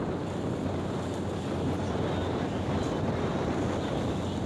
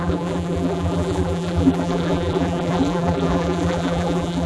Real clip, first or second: first